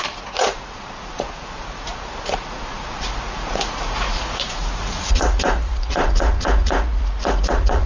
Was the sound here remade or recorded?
remade